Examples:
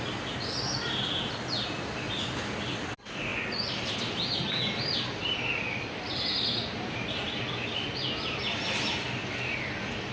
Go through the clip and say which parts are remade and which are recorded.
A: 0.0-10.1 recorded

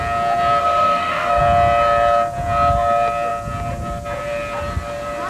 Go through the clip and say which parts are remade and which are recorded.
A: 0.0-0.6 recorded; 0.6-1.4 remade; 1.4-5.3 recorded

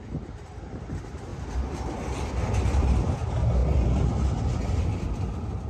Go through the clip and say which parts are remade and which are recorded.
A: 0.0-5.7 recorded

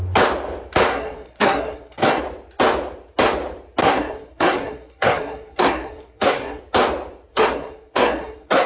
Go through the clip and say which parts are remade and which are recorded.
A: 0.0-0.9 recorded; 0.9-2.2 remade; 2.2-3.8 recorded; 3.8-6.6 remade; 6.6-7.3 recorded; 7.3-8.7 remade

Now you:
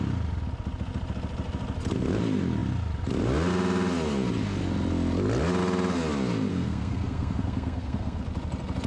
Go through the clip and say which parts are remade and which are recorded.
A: 0.0-6.5 recorded; 6.5-8.2 remade; 8.2-8.9 recorded

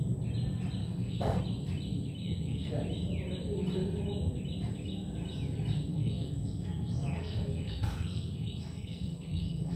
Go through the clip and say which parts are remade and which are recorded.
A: 0.0-0.8 recorded; 0.8-1.4 remade; 1.4-2.2 recorded; 2.2-2.7 remade; 2.7-5.9 recorded; 5.9-9.8 remade